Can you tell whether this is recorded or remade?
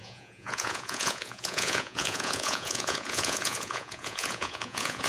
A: remade